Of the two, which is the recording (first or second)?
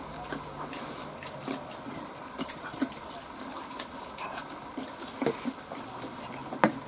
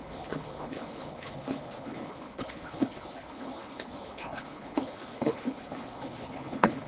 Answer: first